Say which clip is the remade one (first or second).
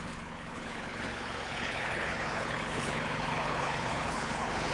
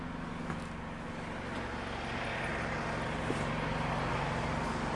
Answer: first